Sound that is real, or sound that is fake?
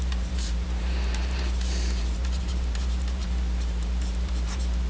fake